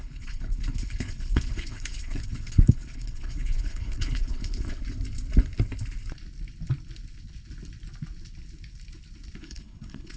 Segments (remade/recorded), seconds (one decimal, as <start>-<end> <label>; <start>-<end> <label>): 0.0-4.8 remade; 4.8-9.4 recorded; 9.4-10.2 remade